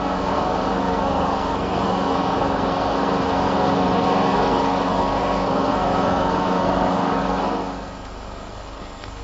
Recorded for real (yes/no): no